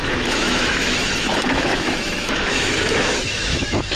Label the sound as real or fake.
fake